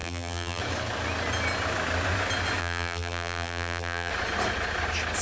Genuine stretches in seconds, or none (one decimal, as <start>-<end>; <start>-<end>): 0.6-2.6; 4.1-5.2